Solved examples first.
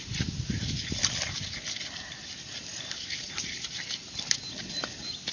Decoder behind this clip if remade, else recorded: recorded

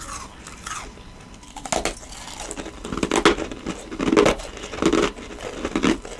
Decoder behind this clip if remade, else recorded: recorded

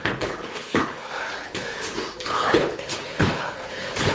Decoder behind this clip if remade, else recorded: remade, codec, HILCodec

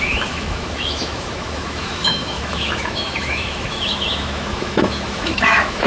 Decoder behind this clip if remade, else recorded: remade, autoencoder, DAC-VAE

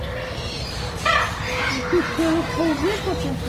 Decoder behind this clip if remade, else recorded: recorded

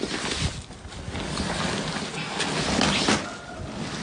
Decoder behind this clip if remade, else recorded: recorded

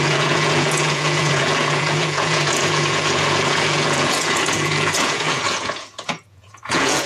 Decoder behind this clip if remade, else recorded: remade, vocoder, Vocos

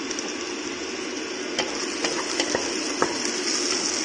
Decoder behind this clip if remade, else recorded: recorded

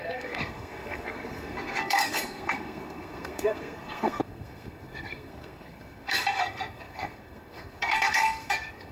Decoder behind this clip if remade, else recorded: remade, codec, SNAC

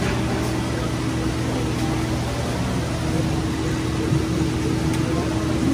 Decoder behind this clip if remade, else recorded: recorded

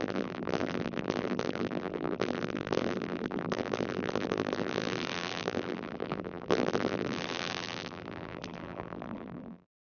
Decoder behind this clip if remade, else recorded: remade, vocoder, BigVGAN v2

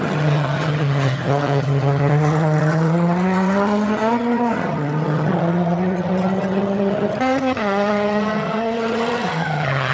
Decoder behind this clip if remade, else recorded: remade, vocoder, HiFi-GAN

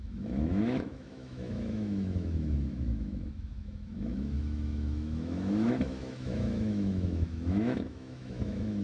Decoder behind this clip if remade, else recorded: remade, autoencoder, DAC-VAE